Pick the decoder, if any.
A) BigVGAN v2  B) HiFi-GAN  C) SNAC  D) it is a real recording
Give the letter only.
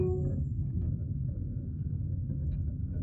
C